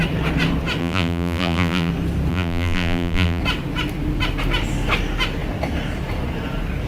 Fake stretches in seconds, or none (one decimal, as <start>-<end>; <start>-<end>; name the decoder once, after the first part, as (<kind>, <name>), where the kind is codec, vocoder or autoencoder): 0.8-1.9 (vocoder, BigVGAN v2); 2.3-3.4